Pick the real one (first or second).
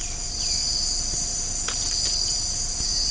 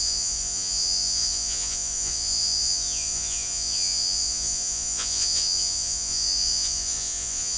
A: first